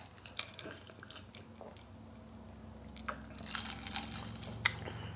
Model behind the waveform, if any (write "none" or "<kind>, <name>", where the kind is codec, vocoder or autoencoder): none